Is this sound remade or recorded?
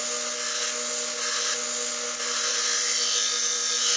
recorded